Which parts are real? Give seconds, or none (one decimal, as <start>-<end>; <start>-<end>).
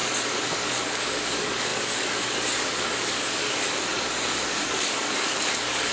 none